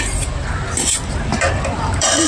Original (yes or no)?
no